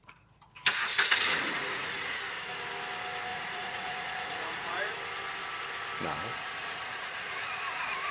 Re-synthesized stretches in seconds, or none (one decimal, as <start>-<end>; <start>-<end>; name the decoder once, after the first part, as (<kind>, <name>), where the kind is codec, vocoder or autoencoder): 0.9-2.2 (vocoder, Vocos); 3.3-4.9; 6.3-8.1